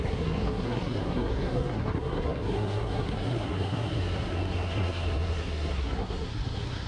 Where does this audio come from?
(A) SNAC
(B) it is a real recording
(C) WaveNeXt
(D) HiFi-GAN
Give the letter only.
A